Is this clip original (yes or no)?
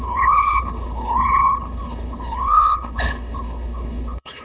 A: no